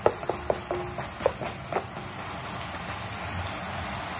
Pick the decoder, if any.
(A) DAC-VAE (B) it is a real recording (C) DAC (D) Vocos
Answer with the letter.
B